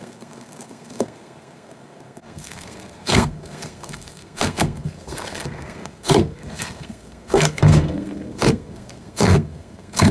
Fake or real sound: fake